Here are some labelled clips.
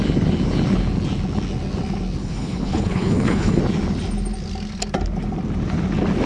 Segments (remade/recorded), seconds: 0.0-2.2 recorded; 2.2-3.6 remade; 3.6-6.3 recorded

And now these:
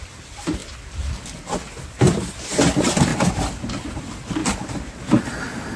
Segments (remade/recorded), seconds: 0.0-0.6 remade; 0.6-2.7 recorded; 2.7-3.1 remade; 3.1-4.0 recorded; 4.0-4.4 remade; 4.4-5.8 recorded

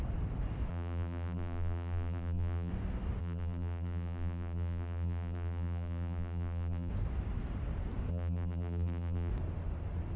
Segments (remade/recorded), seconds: 0.0-0.7 recorded; 0.7-2.7 remade; 2.7-3.2 recorded; 3.2-6.9 remade; 6.9-8.1 recorded; 8.1-9.3 remade; 9.3-10.2 recorded

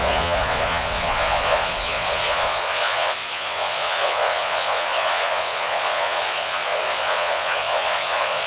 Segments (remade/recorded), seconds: 0.0-8.5 remade

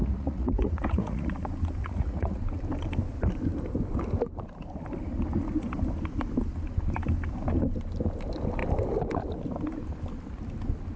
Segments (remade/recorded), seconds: 0.0-1.3 remade; 1.3-1.8 recorded; 1.8-2.4 remade; 2.4-11.0 recorded

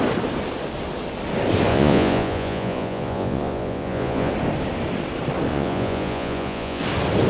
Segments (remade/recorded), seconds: 0.0-1.7 recorded; 1.7-4.3 remade; 4.3-5.5 recorded; 5.5-6.8 remade; 6.8-7.3 recorded

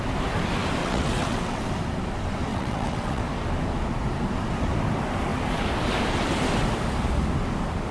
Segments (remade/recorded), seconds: 0.0-0.8 recorded; 0.8-1.6 remade; 1.6-2.5 recorded; 2.5-3.2 remade; 3.2-7.9 recorded